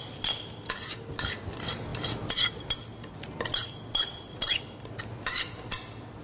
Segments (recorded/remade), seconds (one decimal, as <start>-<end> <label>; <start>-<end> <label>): 0.0-6.2 recorded